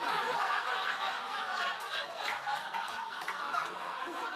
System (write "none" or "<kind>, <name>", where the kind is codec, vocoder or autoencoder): codec, SNAC